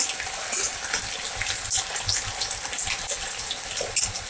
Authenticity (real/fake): real